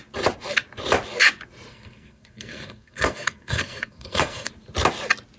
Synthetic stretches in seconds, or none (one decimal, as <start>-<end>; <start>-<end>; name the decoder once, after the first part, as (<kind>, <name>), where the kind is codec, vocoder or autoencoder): 1.7-4.5 (codec, SNAC)